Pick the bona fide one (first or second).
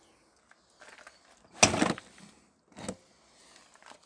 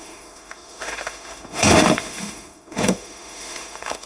first